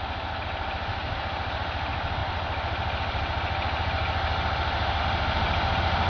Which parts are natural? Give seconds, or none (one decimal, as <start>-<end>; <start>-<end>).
0.0-6.1